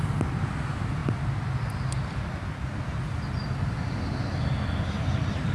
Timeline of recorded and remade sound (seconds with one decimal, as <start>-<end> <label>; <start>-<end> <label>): 0.0-5.5 recorded